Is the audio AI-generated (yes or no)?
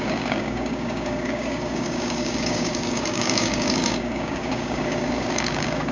yes